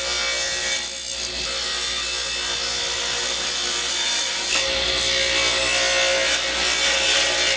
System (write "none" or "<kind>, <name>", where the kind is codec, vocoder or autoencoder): none